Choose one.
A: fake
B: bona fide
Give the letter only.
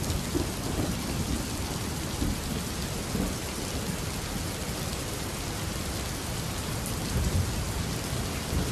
B